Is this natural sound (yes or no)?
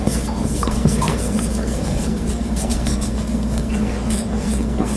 no